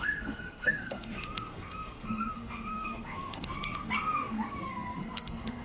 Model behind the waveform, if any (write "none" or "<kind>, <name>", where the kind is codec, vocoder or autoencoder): codec, SNAC